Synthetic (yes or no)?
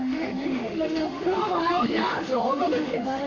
yes